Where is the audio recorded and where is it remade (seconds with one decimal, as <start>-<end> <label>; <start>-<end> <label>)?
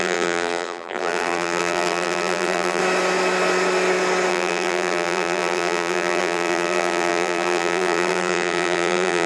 0.0-2.8 remade; 2.8-4.3 recorded; 4.3-9.3 remade